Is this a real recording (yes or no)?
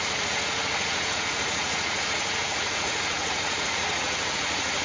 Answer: no